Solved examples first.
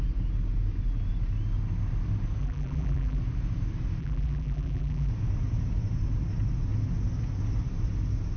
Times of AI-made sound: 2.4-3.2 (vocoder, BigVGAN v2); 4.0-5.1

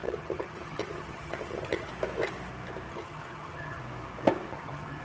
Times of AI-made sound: 0.0-1.9 (vocoder, HiFi-GAN); 2.9-3.8; 4.5-5.0